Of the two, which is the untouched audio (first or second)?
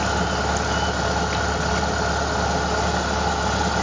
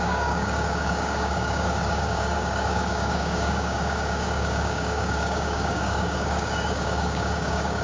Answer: first